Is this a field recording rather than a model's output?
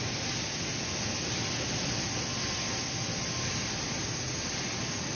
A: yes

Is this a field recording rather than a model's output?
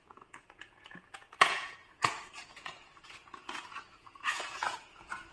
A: no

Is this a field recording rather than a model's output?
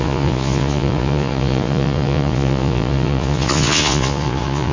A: no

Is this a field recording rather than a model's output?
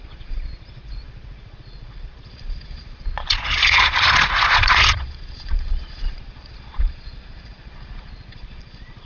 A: no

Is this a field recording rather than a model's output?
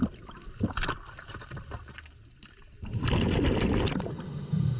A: yes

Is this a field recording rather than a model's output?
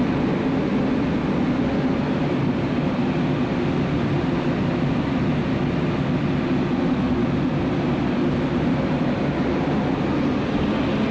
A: yes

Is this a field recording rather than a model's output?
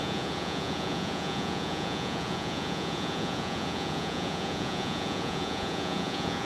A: no